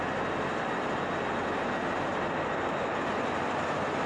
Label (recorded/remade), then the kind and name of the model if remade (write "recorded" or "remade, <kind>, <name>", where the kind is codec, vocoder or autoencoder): recorded